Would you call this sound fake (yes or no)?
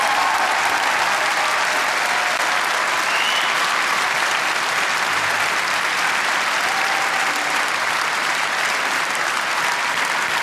no